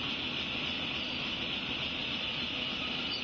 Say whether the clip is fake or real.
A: real